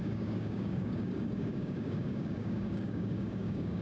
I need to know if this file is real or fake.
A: fake